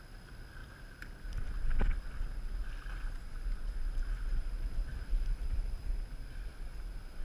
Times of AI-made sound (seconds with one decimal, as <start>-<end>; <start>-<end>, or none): 4.3-5.9